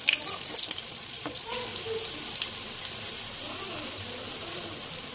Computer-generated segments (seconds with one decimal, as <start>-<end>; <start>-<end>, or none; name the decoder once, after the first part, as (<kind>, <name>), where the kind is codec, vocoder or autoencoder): 0.8-1.7 (vocoder, Vocos)